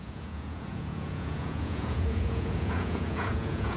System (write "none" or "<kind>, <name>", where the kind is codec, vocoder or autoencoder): vocoder, Vocos